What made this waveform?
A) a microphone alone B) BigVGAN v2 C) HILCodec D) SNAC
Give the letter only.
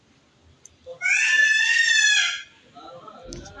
A